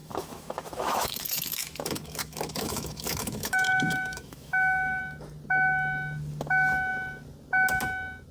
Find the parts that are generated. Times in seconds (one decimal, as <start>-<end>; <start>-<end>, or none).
0.0-5.0